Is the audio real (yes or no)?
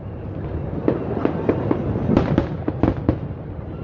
yes